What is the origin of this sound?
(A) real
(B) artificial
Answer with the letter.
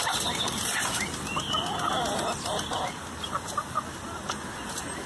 A